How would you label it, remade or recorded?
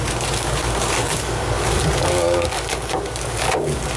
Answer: remade